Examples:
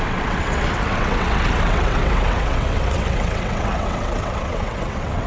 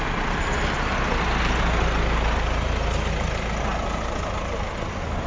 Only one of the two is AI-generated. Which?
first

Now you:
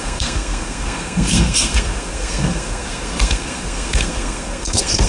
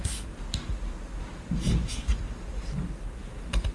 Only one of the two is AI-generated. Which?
first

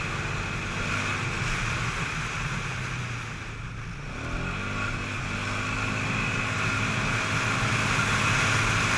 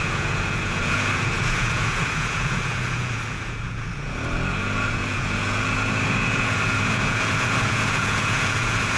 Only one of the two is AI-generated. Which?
second